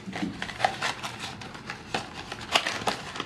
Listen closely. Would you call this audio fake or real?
real